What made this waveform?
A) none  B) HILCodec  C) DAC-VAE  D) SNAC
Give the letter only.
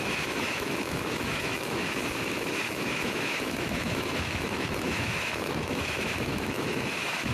C